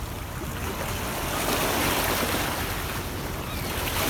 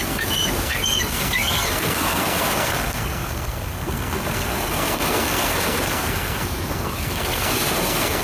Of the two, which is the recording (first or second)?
first